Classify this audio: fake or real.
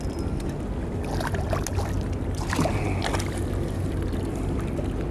real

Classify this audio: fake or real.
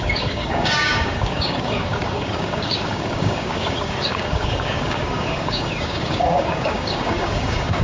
fake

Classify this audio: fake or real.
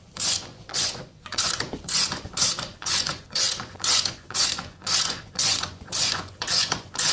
fake